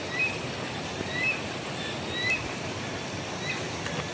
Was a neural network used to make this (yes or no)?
no